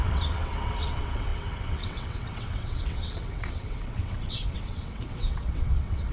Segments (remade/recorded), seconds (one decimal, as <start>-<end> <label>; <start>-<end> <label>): 0.0-6.1 remade